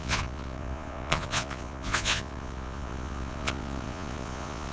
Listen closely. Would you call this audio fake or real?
fake